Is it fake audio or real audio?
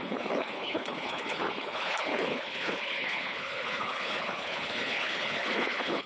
fake